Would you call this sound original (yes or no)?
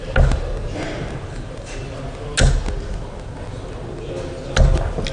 yes